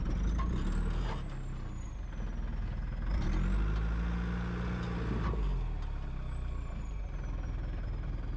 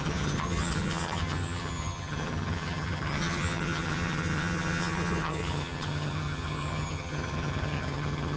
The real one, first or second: first